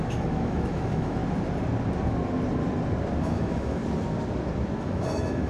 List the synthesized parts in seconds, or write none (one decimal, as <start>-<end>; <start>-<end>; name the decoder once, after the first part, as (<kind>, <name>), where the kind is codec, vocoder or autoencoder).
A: 0.0-1.2 (autoencoder, DAC-VAE); 3.2-3.8; 4.8-5.5